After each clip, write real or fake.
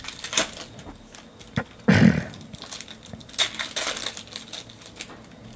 real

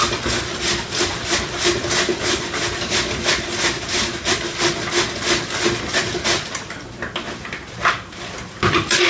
real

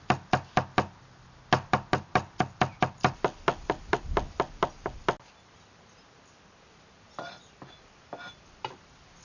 real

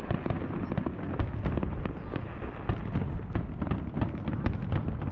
real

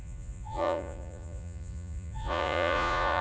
fake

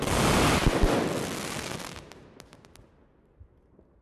real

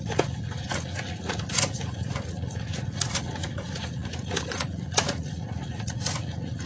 fake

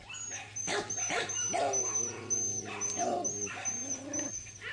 real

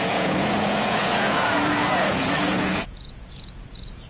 fake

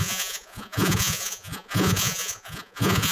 fake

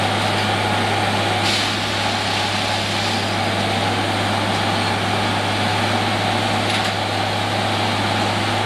real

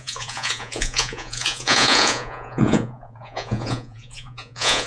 fake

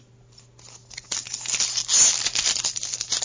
real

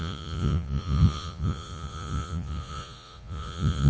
fake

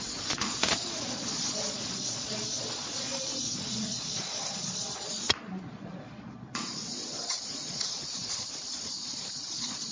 fake